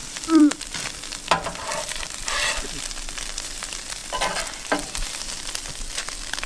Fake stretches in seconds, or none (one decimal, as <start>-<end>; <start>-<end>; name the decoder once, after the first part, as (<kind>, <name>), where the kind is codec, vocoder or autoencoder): 0.0-2.6 (vocoder, BigVGAN v2); 4.0-5.2